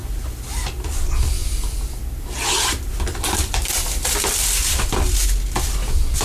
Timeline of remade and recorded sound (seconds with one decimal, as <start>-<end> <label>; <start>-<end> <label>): 0.0-1.4 recorded; 1.4-5.1 remade; 5.1-6.2 recorded